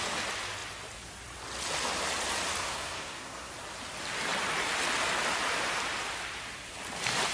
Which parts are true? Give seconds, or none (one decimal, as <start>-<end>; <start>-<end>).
0.0-2.6; 3.5-7.3